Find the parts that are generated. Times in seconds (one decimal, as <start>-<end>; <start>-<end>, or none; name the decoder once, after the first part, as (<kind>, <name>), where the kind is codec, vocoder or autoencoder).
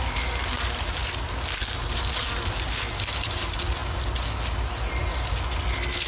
none